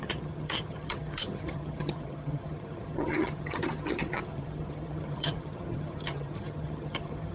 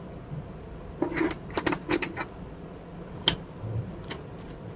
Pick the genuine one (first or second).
second